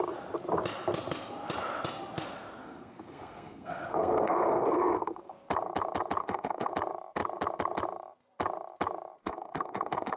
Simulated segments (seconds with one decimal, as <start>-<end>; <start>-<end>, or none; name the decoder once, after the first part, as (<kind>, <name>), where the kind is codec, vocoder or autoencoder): 2.6-5.3 (codec, SNAC); 6.2-6.7; 9.2-10.2